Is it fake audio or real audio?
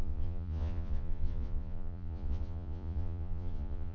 fake